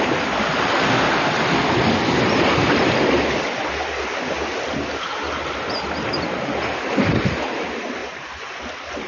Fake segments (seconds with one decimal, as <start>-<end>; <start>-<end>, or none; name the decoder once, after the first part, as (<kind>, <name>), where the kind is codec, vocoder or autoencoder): 8.0-8.6 (vocoder, Vocos)